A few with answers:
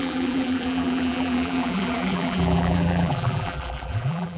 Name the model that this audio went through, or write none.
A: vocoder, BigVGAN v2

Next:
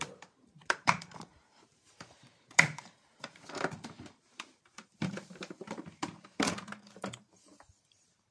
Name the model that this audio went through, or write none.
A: vocoder, BigVGAN v2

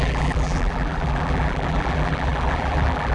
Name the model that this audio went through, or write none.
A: vocoder, BigVGAN v2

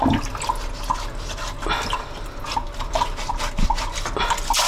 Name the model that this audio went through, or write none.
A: none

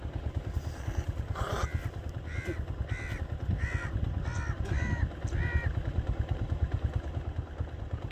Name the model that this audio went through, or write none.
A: none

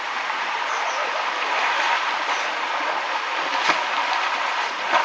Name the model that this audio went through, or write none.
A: vocoder, BigVGAN v2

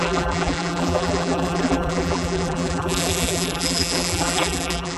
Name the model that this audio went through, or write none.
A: vocoder, BigVGAN v2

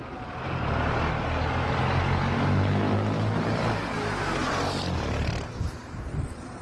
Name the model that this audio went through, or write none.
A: none